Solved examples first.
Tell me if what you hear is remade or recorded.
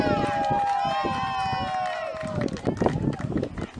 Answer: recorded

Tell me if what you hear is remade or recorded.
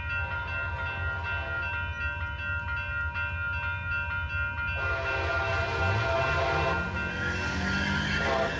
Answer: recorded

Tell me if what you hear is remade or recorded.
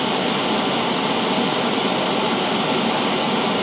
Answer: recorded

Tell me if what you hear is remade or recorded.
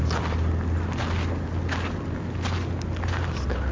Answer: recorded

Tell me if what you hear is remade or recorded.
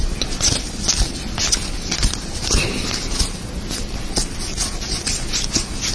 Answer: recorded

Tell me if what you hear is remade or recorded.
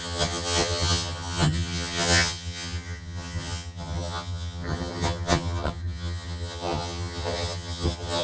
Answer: remade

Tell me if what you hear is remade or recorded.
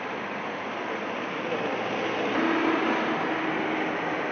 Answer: recorded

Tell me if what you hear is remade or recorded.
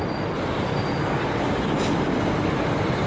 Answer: recorded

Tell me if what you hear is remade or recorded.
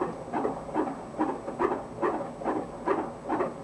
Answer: recorded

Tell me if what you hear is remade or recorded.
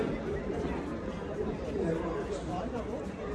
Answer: recorded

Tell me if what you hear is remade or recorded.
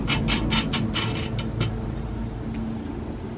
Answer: recorded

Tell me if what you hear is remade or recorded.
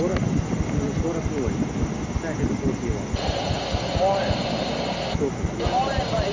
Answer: recorded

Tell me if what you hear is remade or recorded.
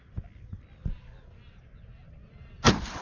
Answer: recorded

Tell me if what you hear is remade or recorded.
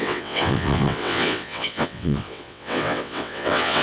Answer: remade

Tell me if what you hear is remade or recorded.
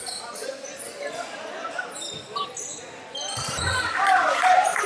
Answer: recorded